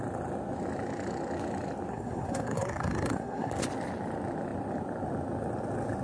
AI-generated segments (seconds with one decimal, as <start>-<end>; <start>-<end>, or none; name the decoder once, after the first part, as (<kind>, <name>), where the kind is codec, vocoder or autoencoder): 1.9-3.5 (codec, SNAC)